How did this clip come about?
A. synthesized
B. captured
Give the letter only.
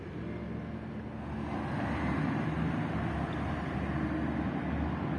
B